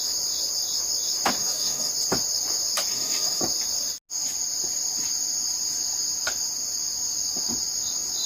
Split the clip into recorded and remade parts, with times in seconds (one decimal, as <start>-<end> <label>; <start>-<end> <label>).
0.0-1.4 recorded; 1.4-1.9 remade; 1.9-2.9 recorded; 2.9-3.4 remade; 3.4-8.3 recorded